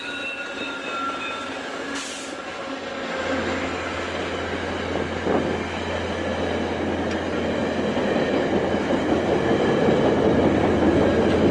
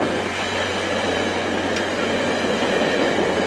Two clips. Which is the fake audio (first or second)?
second